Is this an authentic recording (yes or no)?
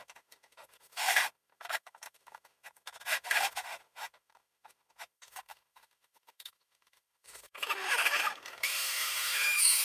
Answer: no